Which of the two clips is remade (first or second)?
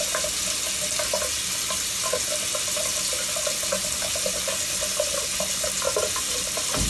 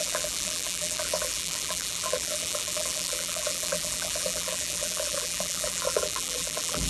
second